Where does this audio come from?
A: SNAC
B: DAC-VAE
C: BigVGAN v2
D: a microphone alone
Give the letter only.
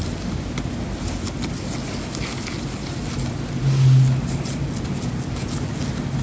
D